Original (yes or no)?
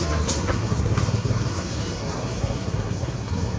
no